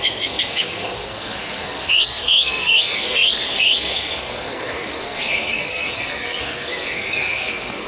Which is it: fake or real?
fake